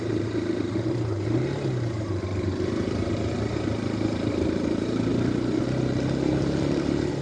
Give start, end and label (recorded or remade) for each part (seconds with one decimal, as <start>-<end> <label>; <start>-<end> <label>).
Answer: 0.0-5.1 remade; 5.1-7.2 recorded